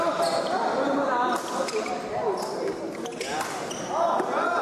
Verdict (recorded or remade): recorded